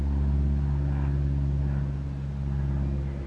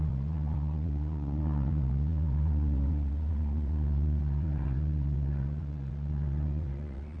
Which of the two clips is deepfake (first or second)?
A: second